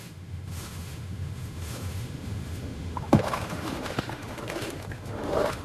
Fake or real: fake